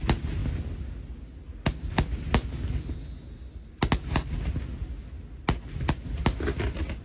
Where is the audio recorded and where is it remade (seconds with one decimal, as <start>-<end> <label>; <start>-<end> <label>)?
0.0-7.0 recorded